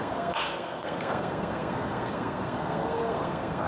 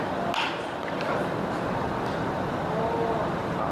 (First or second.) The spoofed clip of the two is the first